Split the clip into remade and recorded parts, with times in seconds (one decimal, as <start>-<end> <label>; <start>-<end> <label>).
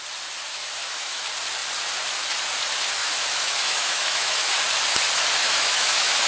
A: 0.0-0.5 recorded; 0.5-1.2 remade; 1.2-3.0 recorded; 3.0-4.6 remade; 4.6-5.4 recorded; 5.4-6.3 remade